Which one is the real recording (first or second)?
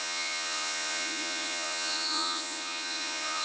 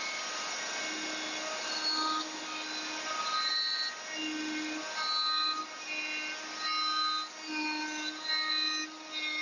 second